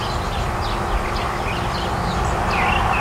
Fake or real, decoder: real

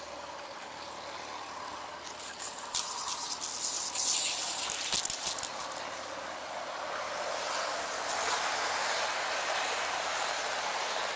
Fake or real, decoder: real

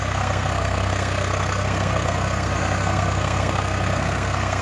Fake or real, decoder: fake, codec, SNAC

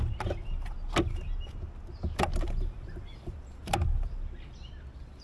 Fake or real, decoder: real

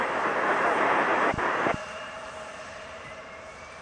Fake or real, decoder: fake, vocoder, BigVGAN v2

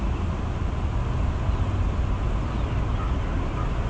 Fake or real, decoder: real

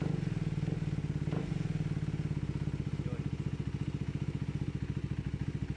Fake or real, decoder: real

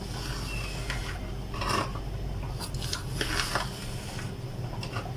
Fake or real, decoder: real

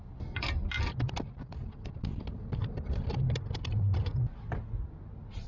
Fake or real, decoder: real